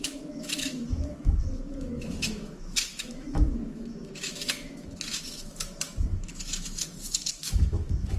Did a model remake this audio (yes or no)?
yes